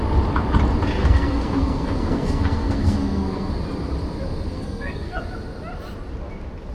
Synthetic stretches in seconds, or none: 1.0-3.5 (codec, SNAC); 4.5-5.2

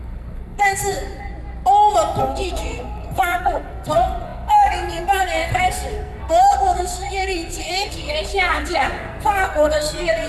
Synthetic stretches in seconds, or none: 0.0-1.3 (codec, SNAC); 2.2-10.3

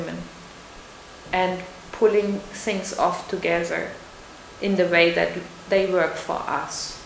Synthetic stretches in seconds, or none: 2.1-3.2 (autoencoder, DAC-VAE)